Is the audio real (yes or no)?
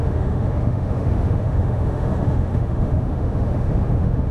no